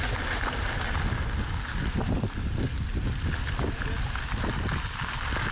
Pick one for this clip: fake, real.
real